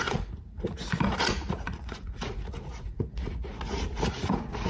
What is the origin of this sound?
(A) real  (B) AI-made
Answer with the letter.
B